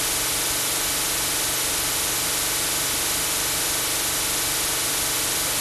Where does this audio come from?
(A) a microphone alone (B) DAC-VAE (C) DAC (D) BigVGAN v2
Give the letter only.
A